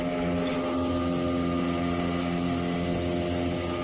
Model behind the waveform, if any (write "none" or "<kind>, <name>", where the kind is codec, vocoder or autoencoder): none